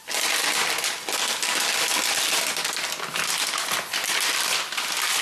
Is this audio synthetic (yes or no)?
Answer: no